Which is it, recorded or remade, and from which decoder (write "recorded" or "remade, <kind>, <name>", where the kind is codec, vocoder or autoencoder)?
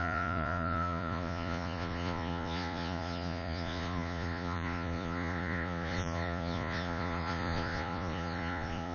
remade, vocoder, Vocos